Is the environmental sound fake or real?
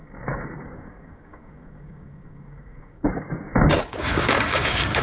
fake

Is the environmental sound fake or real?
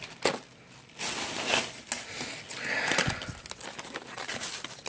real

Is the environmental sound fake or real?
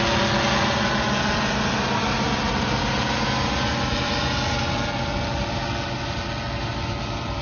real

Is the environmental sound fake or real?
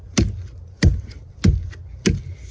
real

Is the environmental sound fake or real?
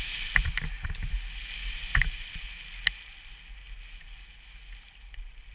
real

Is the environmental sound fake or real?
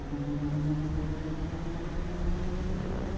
real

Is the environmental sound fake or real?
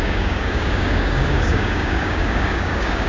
fake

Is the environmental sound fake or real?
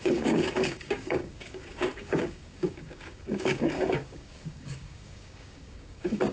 fake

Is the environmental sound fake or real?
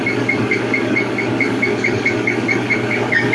fake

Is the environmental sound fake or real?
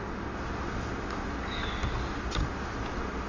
real